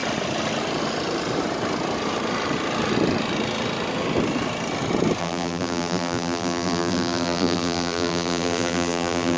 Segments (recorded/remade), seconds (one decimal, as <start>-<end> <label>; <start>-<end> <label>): 0.0-5.2 recorded; 5.2-9.4 remade